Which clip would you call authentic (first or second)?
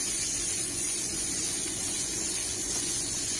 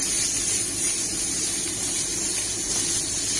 second